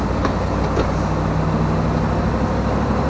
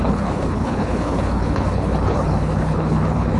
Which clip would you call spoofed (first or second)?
second